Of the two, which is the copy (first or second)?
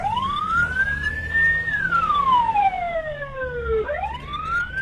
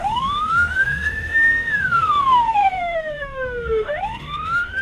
second